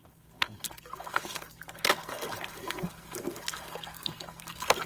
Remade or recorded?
remade